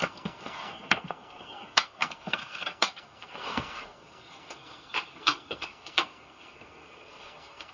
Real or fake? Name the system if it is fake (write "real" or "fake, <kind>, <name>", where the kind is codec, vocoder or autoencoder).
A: fake, codec, SNAC